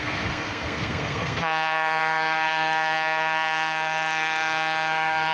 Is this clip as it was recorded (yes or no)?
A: no